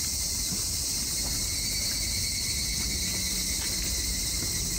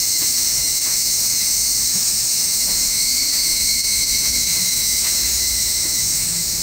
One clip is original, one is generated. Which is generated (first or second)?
second